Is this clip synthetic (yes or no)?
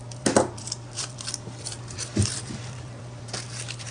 yes